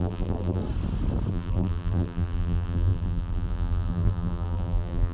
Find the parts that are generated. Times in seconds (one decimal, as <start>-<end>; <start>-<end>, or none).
0.0-0.6; 1.3-5.1